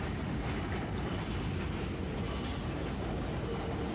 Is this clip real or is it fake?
real